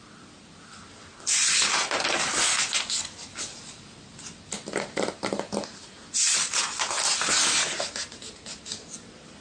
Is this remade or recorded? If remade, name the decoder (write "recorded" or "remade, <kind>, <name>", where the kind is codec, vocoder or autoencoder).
recorded